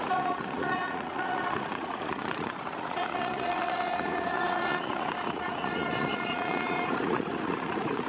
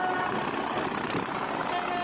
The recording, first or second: second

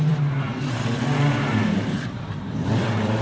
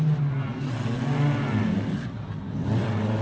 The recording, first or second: second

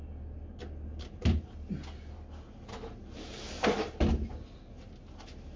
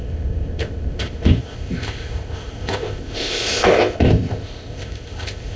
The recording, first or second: first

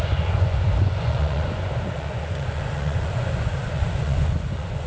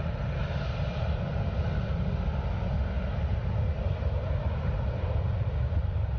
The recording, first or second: second